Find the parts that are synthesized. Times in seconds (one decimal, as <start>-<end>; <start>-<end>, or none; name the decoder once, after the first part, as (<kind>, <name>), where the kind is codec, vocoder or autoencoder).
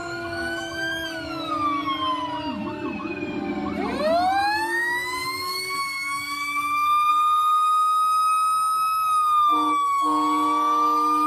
0.0-1.5 (codec, DAC); 4.4-7.1